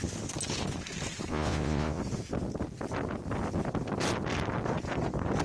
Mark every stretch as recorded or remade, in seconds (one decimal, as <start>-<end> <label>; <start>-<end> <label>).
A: 0.0-1.3 recorded; 1.3-2.0 remade; 2.0-5.4 recorded